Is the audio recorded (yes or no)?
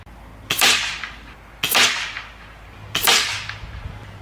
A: yes